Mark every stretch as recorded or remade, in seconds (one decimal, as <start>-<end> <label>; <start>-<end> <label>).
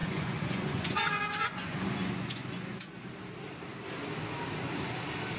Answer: 0.0-3.0 remade; 3.0-5.4 recorded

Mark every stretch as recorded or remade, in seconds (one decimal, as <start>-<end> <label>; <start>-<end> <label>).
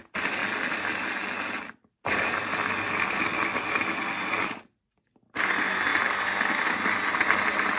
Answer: 0.0-7.8 recorded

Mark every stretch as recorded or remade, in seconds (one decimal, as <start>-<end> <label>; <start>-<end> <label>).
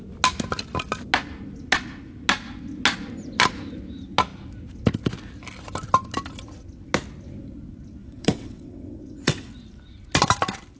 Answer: 0.0-8.0 recorded; 8.0-9.5 remade; 9.5-10.8 recorded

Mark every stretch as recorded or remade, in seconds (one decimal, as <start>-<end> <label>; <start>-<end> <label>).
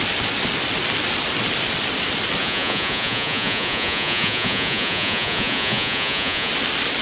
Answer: 0.0-2.4 recorded; 2.4-6.5 remade; 6.5-7.0 recorded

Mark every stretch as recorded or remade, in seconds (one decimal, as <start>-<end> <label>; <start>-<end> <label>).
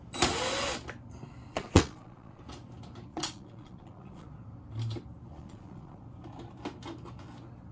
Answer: 0.0-1.5 recorded; 1.5-2.4 remade; 2.4-3.1 recorded; 3.1-4.3 remade; 4.3-5.3 recorded; 5.3-6.0 remade; 6.0-7.7 recorded